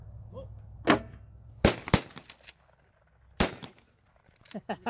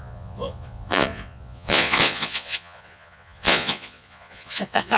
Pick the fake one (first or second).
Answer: second